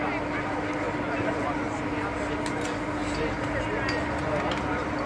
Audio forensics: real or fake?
real